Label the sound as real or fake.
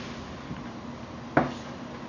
real